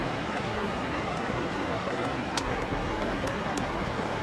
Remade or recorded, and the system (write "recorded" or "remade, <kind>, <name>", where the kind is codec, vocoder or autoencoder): remade, codec, SNAC